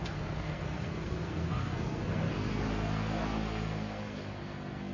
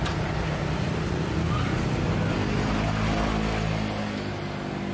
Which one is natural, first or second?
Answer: second